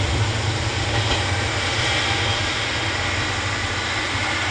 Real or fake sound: real